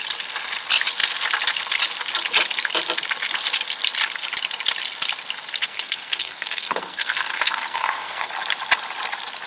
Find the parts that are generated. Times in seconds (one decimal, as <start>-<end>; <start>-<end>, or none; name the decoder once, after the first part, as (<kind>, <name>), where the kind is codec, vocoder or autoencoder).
5.6-8.3 (codec, SNAC)